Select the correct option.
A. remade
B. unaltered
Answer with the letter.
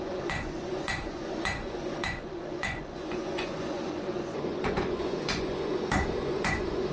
A